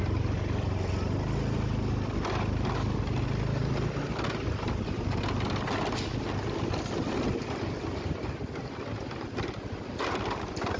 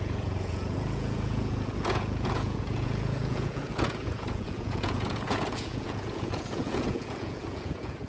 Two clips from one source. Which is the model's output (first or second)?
second